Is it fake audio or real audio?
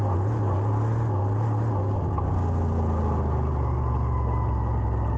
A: real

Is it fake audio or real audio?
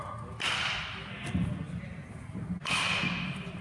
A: real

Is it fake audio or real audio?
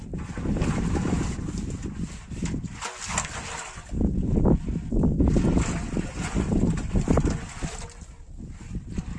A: real